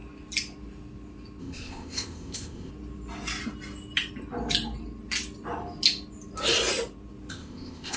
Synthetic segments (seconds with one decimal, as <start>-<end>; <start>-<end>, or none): 1.4-2.7; 7.3-8.0